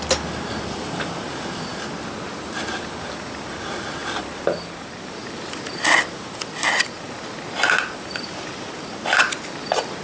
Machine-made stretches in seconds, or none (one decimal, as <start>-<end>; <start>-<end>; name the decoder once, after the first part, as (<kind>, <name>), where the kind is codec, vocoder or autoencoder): none